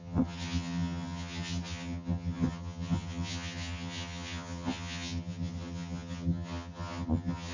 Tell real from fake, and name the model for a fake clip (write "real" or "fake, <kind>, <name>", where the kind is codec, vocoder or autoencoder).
fake, vocoder, HiFi-GAN